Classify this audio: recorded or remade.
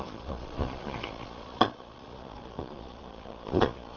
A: remade